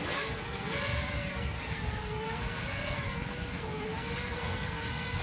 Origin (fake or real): fake